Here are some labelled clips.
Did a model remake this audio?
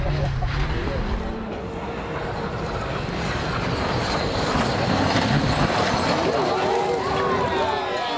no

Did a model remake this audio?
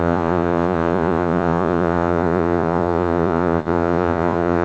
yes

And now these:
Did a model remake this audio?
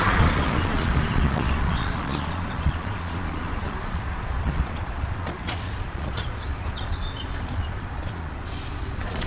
yes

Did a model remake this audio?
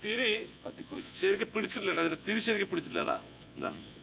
yes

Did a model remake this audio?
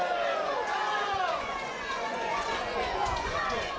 yes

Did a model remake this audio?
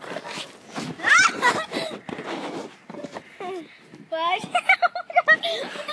no